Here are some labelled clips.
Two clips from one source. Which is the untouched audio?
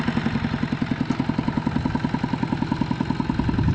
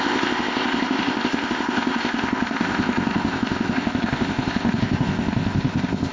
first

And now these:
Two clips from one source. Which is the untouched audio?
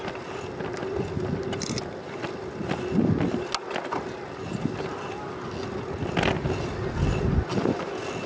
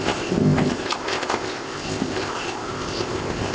first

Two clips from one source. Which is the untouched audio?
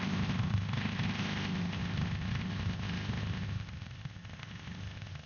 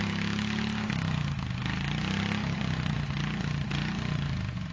second